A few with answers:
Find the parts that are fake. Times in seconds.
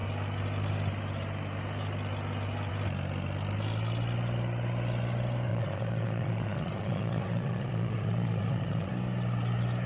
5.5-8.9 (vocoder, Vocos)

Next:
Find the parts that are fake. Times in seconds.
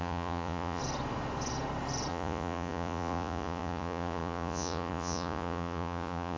0.0-0.8 (vocoder, Vocos); 2.1-6.4